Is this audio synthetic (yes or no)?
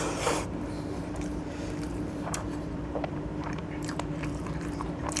yes